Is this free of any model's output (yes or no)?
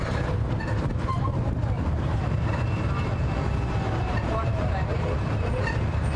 no